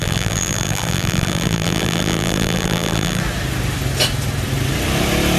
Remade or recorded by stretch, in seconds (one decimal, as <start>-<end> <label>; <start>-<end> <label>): 0.0-3.2 remade; 3.2-5.4 recorded